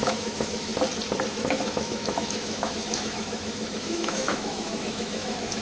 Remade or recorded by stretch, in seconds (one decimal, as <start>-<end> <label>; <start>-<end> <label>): 0.0-0.7 remade; 0.7-1.3 recorded; 1.3-5.6 remade